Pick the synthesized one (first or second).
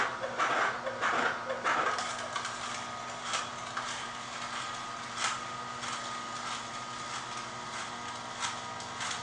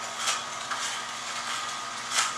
second